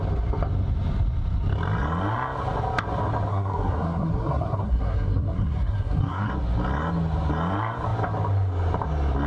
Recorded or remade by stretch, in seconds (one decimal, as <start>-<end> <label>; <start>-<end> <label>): 0.0-3.3 recorded; 3.3-6.3 remade; 6.3-9.3 recorded

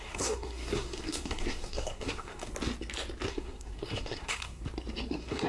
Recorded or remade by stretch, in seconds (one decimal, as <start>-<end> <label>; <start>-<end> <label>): 0.0-2.5 remade; 2.5-3.3 recorded; 3.3-4.6 remade; 4.6-5.1 recorded; 5.1-5.5 remade

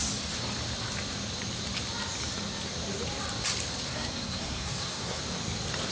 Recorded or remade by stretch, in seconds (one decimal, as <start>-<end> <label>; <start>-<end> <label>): 0.0-3.9 recorded; 3.9-5.2 remade; 5.2-5.9 recorded

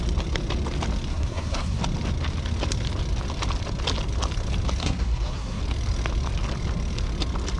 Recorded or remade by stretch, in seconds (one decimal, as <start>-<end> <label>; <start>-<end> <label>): 0.0-1.1 recorded; 1.1-1.8 remade; 1.8-4.8 recorded; 4.8-5.6 remade; 5.6-7.6 recorded

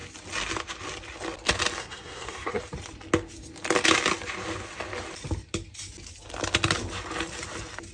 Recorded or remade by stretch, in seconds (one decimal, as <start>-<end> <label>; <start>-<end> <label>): 0.0-1.8 recorded; 1.8-2.6 remade; 2.6-7.9 recorded

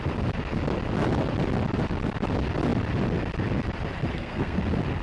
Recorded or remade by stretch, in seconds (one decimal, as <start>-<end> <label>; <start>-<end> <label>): 0.0-4.1 recorded; 4.1-4.6 remade; 4.6-5.0 recorded

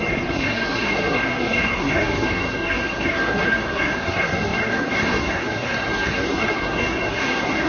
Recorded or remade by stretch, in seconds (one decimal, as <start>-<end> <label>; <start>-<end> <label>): 0.0-7.7 remade

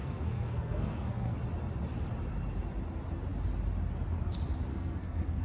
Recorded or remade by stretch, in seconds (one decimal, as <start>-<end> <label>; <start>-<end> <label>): 0.0-1.4 remade; 1.4-4.7 recorded; 4.7-5.4 remade